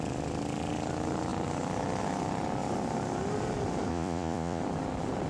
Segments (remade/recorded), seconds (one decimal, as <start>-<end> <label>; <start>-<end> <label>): 0.0-3.9 recorded; 3.9-4.6 remade; 4.6-5.3 recorded

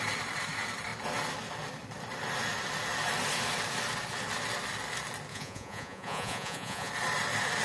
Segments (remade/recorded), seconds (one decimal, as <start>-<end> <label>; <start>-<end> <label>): 0.0-5.3 recorded; 5.3-6.9 remade; 6.9-7.6 recorded

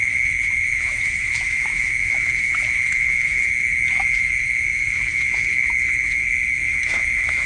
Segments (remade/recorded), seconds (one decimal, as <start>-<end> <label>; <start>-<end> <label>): 0.0-7.5 remade

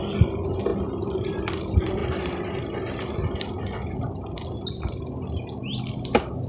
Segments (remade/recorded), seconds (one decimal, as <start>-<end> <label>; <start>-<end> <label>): 0.0-0.7 recorded; 0.7-1.4 remade; 1.4-6.5 recorded

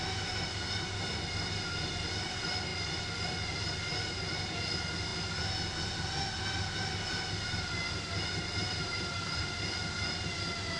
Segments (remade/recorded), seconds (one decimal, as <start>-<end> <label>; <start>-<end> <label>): 0.0-8.6 recorded; 8.6-9.4 remade; 9.4-10.8 recorded